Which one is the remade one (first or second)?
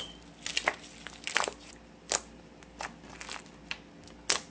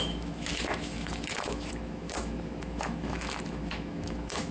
second